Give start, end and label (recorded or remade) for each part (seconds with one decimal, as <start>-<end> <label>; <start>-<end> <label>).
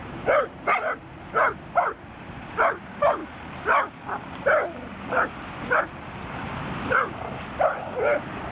0.0-8.5 recorded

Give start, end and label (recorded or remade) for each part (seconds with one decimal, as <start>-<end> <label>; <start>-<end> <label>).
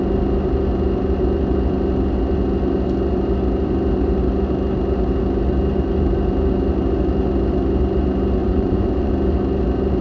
0.0-8.4 recorded; 8.4-9.1 remade; 9.1-10.0 recorded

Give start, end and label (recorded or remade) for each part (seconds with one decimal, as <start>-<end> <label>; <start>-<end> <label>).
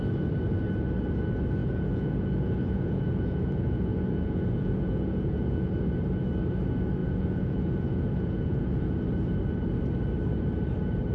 0.0-1.6 recorded; 1.6-5.7 remade; 5.7-7.0 recorded; 7.0-9.0 remade; 9.0-11.1 recorded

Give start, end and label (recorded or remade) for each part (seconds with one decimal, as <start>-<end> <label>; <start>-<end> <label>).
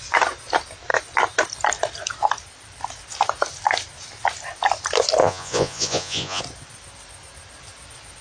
0.0-5.2 recorded; 5.2-6.4 remade; 6.4-8.2 recorded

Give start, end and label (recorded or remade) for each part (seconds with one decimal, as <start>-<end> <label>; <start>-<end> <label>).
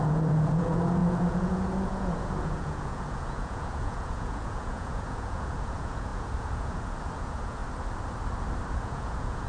0.0-7.6 remade; 7.6-8.7 recorded; 8.7-9.5 remade